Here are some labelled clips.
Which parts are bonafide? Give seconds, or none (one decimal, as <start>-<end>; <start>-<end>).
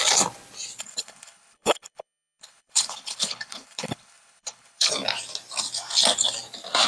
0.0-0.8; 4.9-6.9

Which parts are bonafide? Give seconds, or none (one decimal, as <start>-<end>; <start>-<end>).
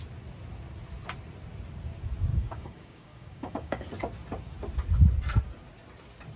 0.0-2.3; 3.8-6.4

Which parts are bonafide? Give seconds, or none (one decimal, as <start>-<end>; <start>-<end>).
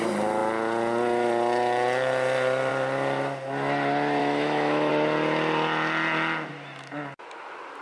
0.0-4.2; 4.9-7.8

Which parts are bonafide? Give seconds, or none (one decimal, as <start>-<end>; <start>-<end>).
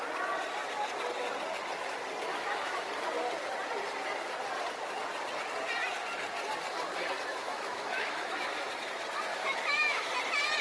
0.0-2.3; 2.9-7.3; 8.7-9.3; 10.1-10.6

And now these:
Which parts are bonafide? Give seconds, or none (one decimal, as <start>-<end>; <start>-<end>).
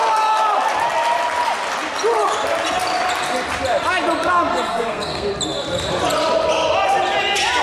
0.0-4.5; 5.3-7.6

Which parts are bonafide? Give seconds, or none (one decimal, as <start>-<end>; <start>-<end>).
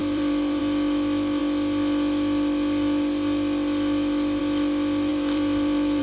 0.6-5.1